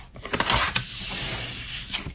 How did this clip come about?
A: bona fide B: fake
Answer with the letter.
B